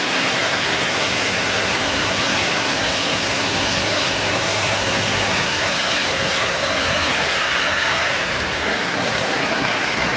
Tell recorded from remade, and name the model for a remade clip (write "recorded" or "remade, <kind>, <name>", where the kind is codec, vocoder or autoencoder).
remade, codec, SNAC